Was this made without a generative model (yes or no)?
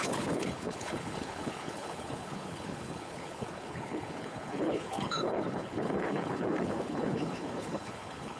no